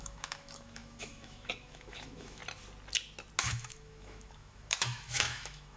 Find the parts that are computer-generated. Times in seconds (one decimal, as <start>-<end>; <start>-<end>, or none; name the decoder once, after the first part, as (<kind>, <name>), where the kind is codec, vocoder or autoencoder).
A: 0.0-2.4 (autoencoder, DAC-VAE); 3.4-5.8